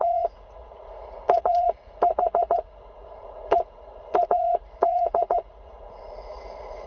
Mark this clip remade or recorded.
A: remade